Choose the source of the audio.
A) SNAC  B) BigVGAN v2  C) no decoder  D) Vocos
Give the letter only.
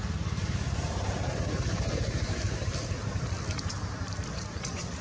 C